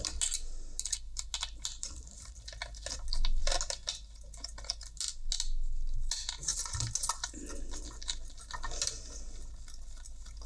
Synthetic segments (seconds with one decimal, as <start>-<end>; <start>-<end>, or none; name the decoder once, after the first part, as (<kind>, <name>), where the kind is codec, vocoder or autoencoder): none